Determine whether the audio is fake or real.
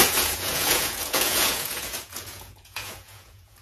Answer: fake